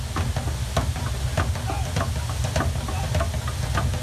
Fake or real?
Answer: real